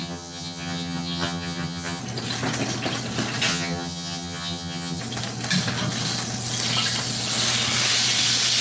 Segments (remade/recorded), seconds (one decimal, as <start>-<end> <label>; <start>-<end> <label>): 0.0-2.0 remade; 2.0-3.5 recorded; 3.5-5.0 remade; 5.0-8.6 recorded